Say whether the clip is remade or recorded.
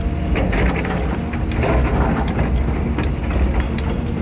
recorded